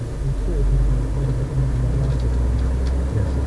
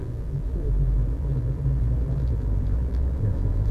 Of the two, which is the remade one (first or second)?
second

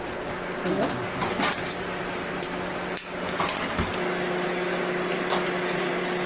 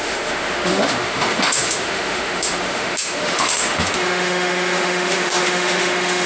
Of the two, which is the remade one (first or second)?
second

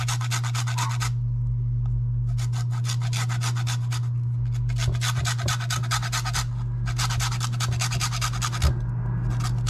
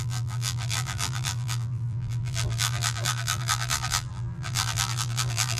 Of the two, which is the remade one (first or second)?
second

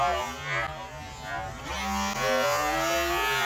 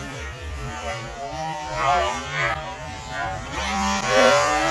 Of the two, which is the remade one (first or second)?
second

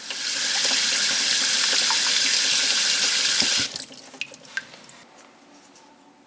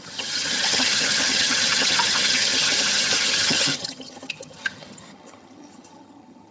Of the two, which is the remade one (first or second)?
second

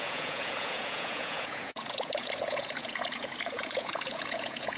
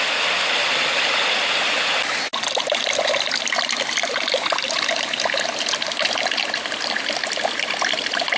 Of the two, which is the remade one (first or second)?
first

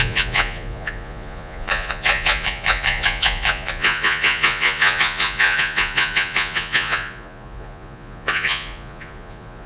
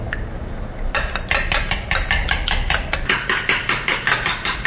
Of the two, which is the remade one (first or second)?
first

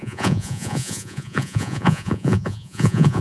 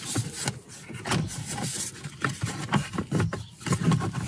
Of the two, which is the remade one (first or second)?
first